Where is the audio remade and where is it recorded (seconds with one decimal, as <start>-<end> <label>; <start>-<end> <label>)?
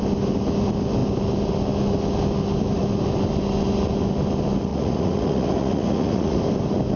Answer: 0.0-4.7 recorded; 4.7-6.4 remade; 6.4-7.0 recorded